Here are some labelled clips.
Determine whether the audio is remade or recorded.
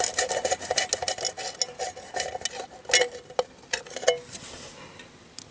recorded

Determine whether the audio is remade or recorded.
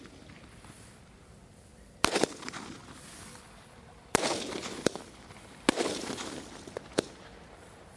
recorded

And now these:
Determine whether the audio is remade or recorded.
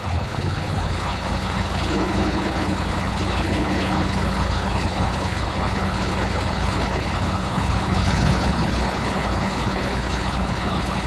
remade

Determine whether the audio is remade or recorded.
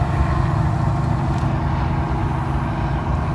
recorded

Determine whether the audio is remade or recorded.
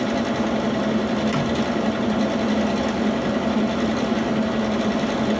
recorded